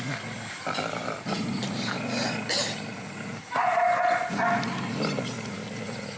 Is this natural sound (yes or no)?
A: yes